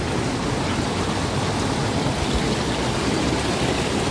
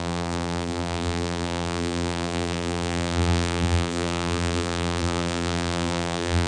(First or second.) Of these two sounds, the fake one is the second